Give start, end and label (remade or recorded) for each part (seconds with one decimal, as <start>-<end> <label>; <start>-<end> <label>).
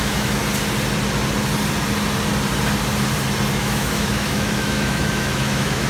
0.0-0.4 remade; 0.4-3.5 recorded; 3.5-5.9 remade